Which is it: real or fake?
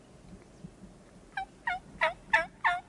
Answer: real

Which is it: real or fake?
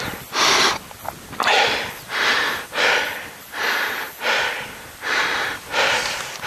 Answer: real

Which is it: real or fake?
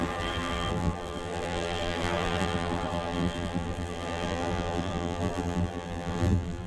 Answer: fake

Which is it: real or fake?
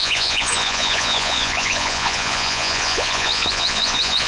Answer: fake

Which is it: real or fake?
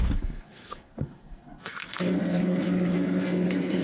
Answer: fake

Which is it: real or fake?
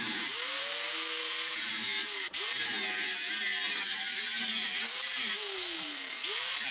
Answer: fake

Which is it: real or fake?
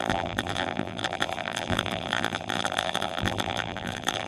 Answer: fake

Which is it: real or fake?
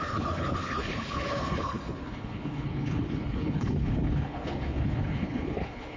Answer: fake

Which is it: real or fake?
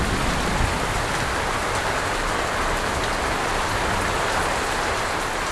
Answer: real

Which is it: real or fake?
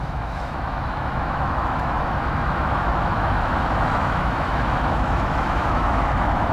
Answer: fake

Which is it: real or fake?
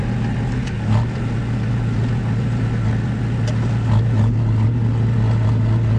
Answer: real